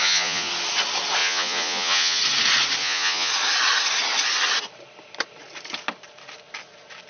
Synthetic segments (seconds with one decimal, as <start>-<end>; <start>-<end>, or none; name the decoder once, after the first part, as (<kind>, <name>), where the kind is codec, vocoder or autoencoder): 0.0-0.5 (vocoder, Vocos); 1.2-2.2; 2.8-3.3